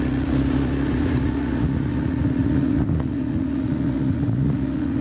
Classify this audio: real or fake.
fake